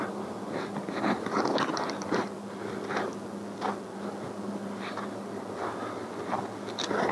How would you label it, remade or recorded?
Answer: recorded